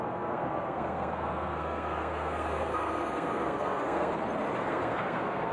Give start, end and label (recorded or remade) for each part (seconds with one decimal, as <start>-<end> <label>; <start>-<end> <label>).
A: 0.0-4.1 remade; 4.1-4.6 recorded; 4.6-5.5 remade